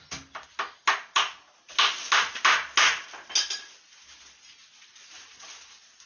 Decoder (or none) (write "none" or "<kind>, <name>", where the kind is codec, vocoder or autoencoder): none